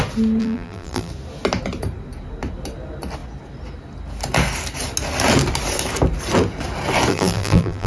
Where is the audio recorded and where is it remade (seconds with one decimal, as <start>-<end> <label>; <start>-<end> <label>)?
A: 0.0-0.4 recorded; 0.4-1.1 remade; 1.1-7.1 recorded; 7.1-7.9 remade